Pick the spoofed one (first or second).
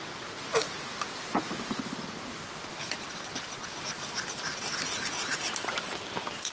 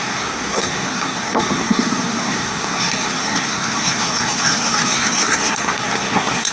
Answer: second